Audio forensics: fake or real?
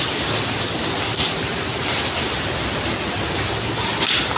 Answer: real